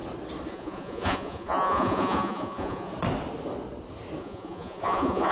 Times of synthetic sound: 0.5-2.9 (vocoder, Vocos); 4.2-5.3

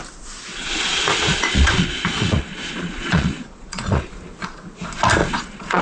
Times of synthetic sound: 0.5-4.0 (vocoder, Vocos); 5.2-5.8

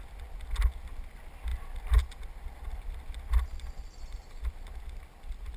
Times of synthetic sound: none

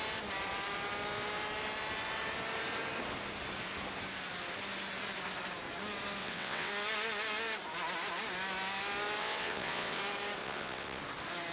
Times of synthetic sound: 6.2-6.7 (vocoder, WaveNeXt); 9.2-10.0; 10.4-11.0

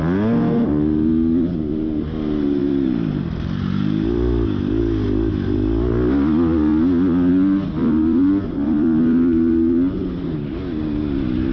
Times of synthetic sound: 2.6-4.8 (vocoder, BigVGAN v2); 5.3-5.9; 7.8-9.5

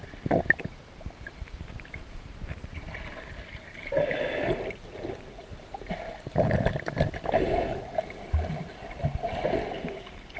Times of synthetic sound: none